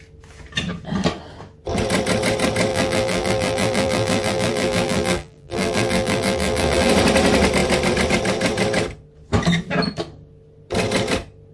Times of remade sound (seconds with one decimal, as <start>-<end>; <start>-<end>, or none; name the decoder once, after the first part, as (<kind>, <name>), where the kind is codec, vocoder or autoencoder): 2.7-6.9 (vocoder, BigVGAN v2)

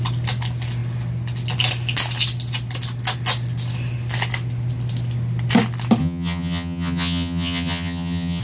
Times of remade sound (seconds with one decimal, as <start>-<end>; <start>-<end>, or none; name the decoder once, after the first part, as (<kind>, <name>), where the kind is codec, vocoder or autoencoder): 6.0-8.4 (vocoder, HiFi-GAN)

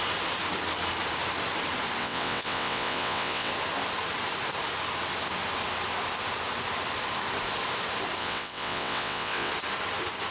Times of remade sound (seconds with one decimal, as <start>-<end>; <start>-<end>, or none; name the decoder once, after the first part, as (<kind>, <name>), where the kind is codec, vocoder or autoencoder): 2.0-3.5 (vocoder, WaveNeXt); 8.2-9.5

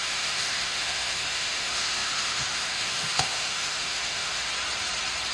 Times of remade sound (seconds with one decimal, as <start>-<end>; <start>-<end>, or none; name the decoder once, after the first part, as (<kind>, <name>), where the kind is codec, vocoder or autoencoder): 0.0-4.5 (autoencoder, DAC-VAE)